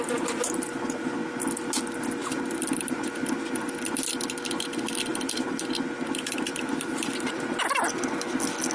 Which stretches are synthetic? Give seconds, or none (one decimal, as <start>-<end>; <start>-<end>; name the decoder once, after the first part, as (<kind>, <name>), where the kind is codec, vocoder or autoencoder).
none